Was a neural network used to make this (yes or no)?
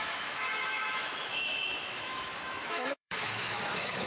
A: yes